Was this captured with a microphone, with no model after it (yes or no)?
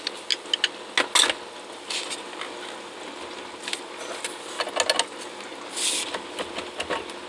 yes